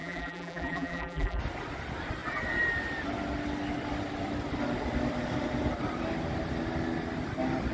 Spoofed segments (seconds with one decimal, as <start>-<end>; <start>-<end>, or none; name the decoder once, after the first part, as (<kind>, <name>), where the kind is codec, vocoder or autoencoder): 0.0-1.4 (vocoder, BigVGAN v2)